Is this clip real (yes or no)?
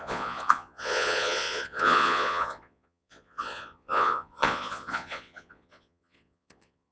no